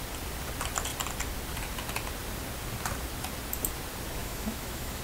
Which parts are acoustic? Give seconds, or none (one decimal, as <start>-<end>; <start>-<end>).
0.0-4.2

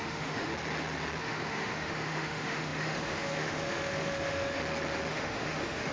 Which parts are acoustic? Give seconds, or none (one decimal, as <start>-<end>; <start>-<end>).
0.5-1.2; 4.6-5.1

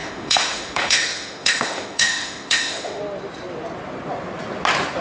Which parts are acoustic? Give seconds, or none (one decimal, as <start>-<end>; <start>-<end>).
3.0-5.0

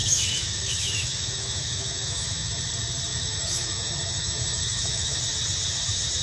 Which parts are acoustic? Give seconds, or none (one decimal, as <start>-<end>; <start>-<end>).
2.6-3.1; 5.2-6.2